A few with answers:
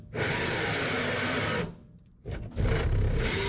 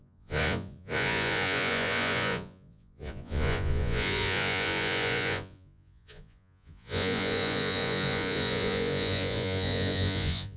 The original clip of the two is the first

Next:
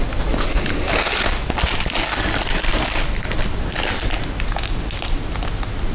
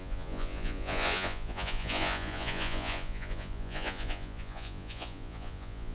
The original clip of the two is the first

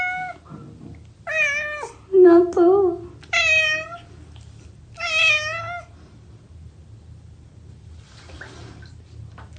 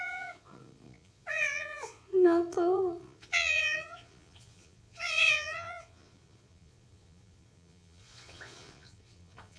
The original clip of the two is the first